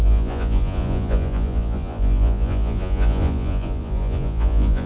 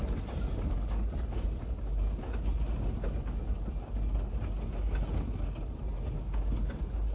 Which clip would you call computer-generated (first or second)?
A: first